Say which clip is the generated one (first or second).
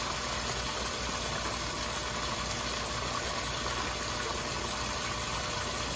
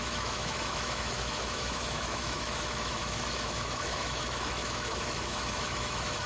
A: second